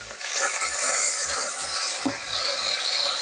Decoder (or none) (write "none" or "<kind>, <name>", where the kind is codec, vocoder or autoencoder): codec, DAC